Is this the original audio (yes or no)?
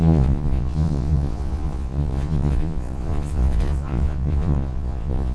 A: no